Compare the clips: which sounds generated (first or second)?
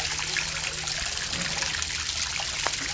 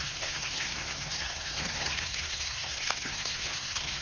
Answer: second